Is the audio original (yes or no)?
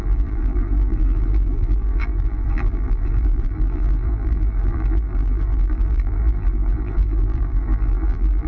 no